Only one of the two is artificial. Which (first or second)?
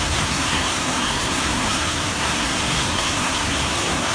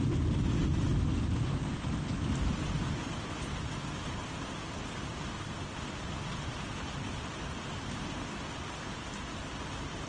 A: first